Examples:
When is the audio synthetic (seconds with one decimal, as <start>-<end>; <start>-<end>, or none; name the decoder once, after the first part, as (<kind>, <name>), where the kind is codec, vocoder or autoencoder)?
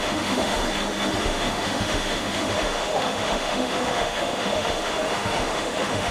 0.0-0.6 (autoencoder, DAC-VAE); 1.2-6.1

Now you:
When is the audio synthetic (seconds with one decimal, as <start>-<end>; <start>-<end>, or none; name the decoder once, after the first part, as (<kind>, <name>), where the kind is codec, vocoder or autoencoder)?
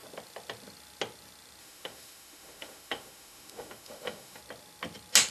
1.6-4.4 (autoencoder, DAC-VAE)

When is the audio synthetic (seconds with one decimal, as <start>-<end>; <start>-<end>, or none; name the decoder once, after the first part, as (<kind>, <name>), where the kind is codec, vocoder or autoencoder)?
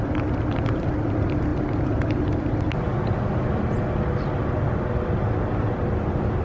none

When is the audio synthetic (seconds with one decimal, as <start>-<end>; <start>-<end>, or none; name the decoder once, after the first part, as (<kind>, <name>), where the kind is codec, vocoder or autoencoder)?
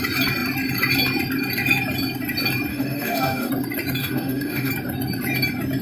2.7-3.5 (autoencoder, DAC-VAE); 4.0-4.7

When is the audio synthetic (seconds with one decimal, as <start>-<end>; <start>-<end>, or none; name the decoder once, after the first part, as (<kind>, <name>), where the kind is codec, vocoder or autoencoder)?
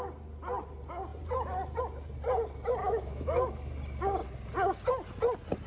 2.8-3.5 (autoencoder, DAC-VAE)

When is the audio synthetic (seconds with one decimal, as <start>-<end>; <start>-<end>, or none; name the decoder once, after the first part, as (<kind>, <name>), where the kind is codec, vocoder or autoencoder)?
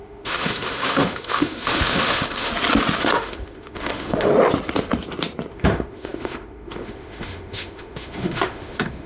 0.0-2.5 (autoencoder, DAC-VAE); 3.0-4.3; 5.5-9.1